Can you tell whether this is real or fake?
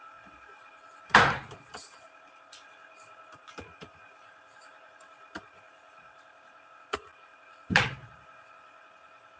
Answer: fake